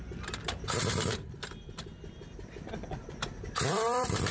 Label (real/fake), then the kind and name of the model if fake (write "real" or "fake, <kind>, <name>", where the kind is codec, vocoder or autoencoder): fake, vocoder, BigVGAN v2